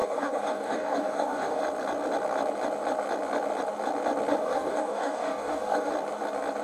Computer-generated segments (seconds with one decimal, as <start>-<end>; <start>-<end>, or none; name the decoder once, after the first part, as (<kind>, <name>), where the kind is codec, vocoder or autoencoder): 0.0-1.6 (codec, DAC); 4.4-5.9